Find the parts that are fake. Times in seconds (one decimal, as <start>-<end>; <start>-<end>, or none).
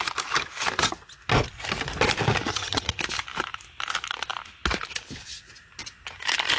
2.5-3.0